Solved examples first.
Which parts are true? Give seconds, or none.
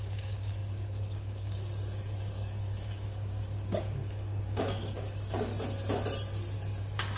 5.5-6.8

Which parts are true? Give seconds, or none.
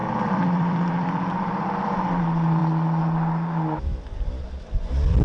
2.2-5.2